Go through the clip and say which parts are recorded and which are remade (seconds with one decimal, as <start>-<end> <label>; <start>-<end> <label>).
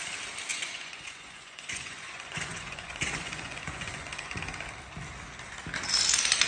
0.0-0.5 recorded; 0.5-4.4 remade; 4.4-6.5 recorded